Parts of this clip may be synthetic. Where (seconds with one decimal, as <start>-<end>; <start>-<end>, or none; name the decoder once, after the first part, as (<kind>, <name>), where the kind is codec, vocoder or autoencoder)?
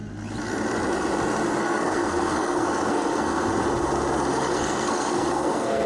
1.6-3.5 (codec, SNAC); 4.3-5.9